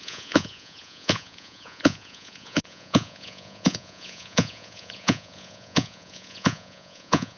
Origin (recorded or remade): remade